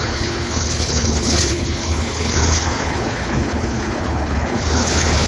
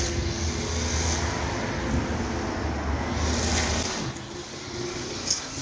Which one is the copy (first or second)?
first